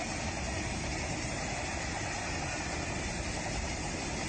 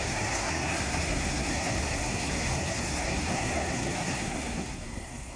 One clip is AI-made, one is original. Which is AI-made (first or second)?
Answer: second